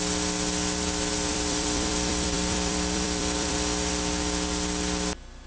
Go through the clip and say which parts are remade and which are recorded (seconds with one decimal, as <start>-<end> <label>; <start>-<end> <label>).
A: 0.0-1.3 recorded; 1.3-3.9 remade; 3.9-5.5 recorded